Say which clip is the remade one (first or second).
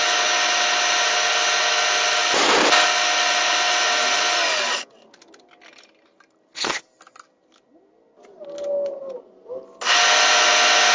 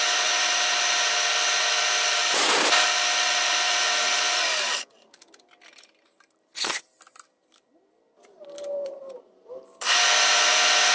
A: second